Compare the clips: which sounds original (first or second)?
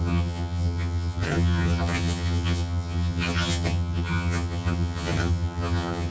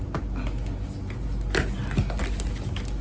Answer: second